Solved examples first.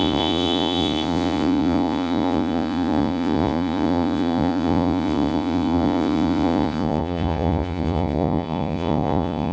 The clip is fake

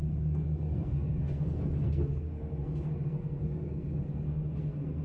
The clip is fake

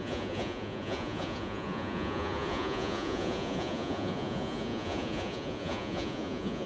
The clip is fake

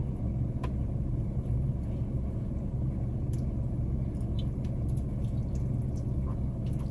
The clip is real